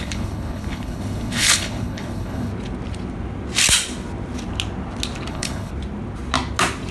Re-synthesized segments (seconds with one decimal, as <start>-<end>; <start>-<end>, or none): 0.0-2.5; 5.3-5.7